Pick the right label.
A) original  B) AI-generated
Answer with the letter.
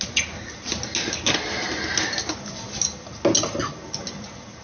A